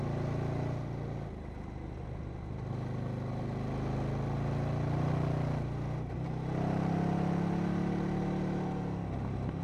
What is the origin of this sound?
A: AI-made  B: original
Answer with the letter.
B